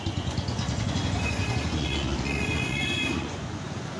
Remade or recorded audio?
remade